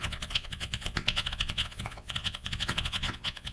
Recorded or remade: remade